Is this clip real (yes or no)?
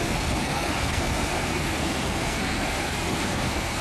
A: no